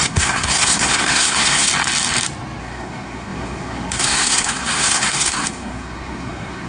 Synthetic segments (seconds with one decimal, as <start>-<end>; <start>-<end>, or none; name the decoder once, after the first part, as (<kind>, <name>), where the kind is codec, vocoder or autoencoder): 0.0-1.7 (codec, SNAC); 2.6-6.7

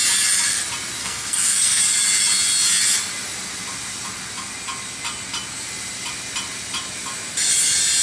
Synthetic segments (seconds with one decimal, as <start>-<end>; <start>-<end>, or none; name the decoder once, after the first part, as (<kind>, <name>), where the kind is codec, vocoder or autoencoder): 1.0-1.8 (codec, SNAC)

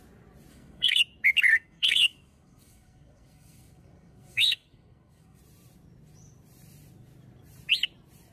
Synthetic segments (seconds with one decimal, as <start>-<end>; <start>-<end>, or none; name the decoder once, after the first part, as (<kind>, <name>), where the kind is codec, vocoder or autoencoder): 0.5-1.0 (codec, SNAC); 1.5-5.4